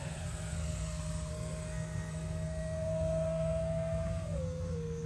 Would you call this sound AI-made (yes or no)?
yes